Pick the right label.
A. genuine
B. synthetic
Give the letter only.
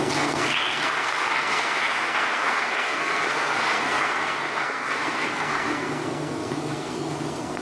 B